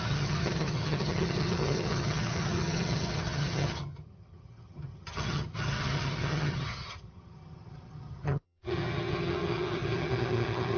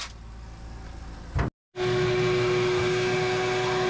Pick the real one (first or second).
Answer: second